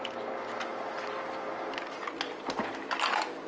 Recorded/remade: recorded